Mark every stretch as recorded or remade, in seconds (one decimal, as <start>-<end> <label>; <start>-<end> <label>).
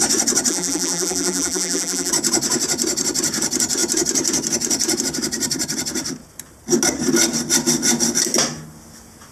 0.0-0.5 recorded; 0.5-2.1 remade; 2.1-9.3 recorded